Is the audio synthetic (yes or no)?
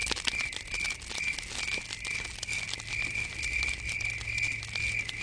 no